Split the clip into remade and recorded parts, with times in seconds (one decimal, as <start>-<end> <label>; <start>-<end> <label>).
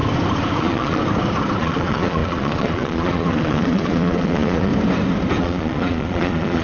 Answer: 0.0-0.6 recorded; 0.6-1.0 remade; 1.0-1.6 recorded; 1.6-4.7 remade; 4.7-5.4 recorded; 5.4-6.6 remade